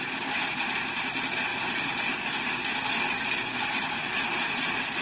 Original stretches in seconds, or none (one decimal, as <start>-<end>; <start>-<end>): 0.0-5.0